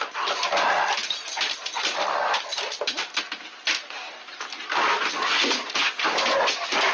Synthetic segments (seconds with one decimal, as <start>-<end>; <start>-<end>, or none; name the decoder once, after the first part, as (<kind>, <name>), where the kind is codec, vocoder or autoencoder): 0.0-6.9 (vocoder, BigVGAN v2)